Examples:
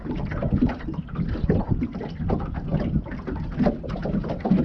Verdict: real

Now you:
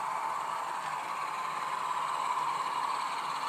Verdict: real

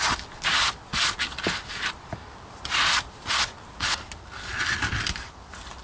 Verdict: real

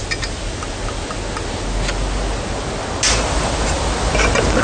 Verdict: real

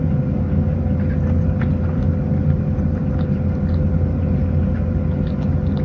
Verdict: real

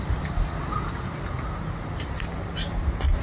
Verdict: real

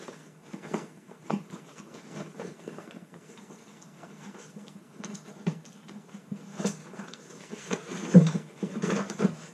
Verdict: fake